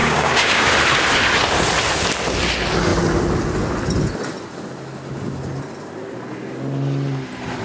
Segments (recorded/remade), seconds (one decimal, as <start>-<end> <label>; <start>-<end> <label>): 0.0-0.7 remade; 0.7-7.6 recorded